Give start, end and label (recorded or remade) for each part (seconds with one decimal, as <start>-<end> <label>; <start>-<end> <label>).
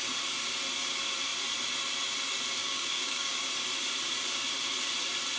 0.0-2.6 recorded; 2.6-3.5 remade; 3.5-5.4 recorded